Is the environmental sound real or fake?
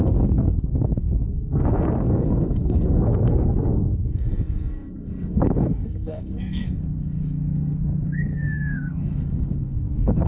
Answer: fake